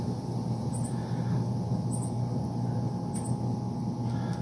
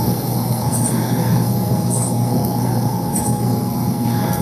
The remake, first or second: second